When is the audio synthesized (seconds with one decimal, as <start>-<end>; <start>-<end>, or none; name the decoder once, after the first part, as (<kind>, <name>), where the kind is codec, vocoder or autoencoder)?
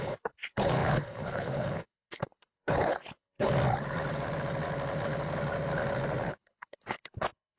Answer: 0.0-3.5 (codec, HILCodec); 6.3-7.6